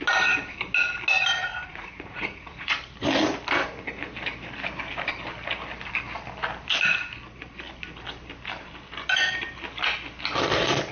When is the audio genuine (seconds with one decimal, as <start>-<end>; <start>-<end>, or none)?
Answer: 0.0-1.4; 2.8-10.9